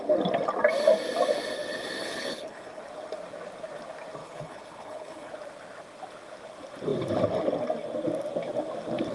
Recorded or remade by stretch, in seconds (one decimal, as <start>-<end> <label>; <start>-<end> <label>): 0.0-2.0 recorded; 2.0-2.8 remade; 2.8-4.2 recorded; 4.2-5.3 remade; 5.3-9.1 recorded